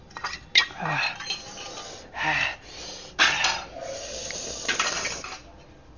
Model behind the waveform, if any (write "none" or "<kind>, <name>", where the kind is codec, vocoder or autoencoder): none